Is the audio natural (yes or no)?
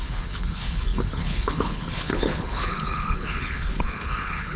no